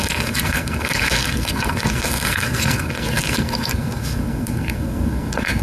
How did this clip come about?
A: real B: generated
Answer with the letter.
B